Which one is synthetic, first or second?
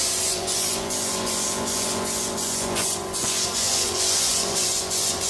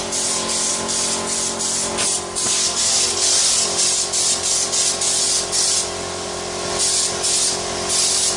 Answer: first